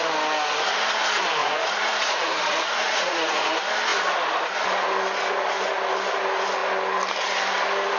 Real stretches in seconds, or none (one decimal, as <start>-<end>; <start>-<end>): 0.0-1.4; 3.5-8.0